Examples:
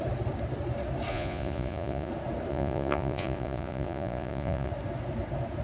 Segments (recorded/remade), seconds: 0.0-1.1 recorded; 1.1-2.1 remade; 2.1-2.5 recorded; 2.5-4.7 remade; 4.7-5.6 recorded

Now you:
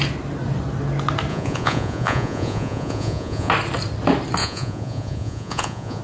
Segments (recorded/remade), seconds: 0.0-1.3 recorded; 1.3-3.5 remade; 3.5-4.4 recorded; 4.4-6.0 remade

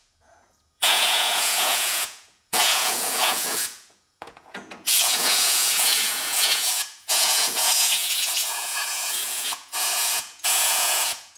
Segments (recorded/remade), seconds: 0.0-11.4 remade

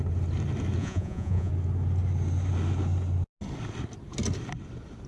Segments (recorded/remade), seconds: 0.0-0.8 recorded; 0.8-1.5 remade; 1.5-5.1 recorded

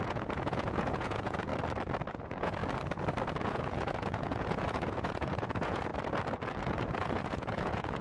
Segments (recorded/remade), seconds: 0.0-1.5 remade; 1.5-2.1 recorded; 2.1-2.6 remade; 2.6-3.4 recorded; 3.4-5.9 remade; 5.9-6.6 recorded; 6.6-8.0 remade

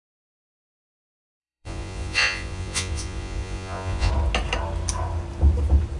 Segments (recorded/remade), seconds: 0.0-1.4 recorded; 1.4-4.1 remade; 4.1-6.0 recorded